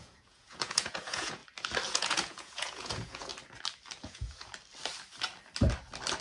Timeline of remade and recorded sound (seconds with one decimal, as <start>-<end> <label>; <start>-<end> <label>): 0.0-1.4 remade; 1.4-1.9 recorded; 1.9-3.3 remade; 3.3-4.0 recorded; 4.0-4.5 remade; 4.5-6.2 recorded